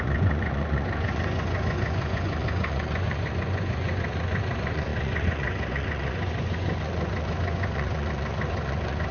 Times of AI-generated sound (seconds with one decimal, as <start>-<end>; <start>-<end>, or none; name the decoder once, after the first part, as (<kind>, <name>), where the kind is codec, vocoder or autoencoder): 0.0-9.1 (vocoder, Vocos)